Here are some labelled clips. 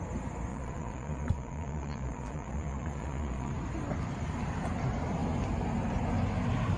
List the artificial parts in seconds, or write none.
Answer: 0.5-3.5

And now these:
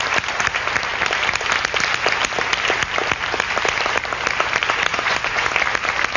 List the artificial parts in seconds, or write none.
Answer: 4.9-5.5

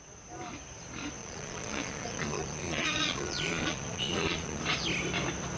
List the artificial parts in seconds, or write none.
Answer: 1.2-4.6

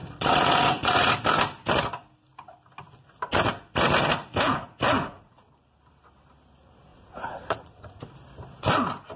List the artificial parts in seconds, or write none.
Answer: 0.0-1.1; 4.2-5.5; 6.9-8.0